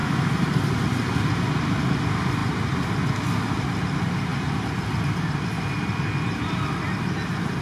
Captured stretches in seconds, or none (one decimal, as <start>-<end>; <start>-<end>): 0.0-7.6

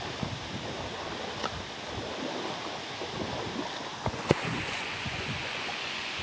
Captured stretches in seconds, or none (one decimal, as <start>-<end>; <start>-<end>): 0.0-3.9

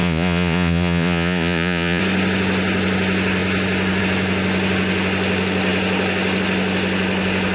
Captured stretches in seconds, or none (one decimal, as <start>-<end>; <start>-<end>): 2.0-7.5